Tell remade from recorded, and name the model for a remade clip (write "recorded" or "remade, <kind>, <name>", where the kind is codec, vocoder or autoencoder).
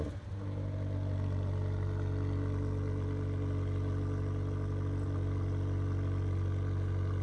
recorded